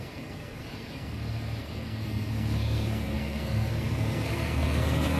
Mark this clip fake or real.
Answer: fake